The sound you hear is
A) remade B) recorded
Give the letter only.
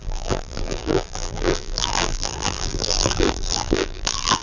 A